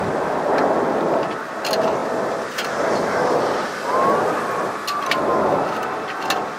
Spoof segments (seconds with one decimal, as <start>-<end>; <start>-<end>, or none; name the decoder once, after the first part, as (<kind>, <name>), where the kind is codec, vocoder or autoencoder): none